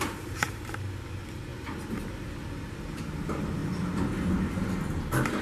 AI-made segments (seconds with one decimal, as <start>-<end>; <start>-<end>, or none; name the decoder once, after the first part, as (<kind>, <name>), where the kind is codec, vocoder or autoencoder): 0.0-1.5 (vocoder, BigVGAN v2); 2.7-3.6; 4.9-5.4